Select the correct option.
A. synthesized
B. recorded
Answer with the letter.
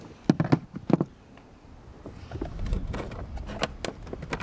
B